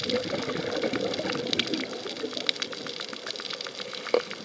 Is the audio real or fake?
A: real